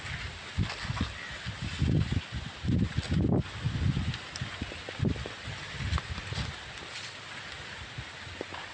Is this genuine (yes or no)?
yes